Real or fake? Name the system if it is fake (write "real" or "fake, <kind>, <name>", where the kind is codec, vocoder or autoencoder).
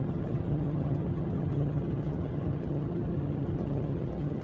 fake, vocoder, HiFi-GAN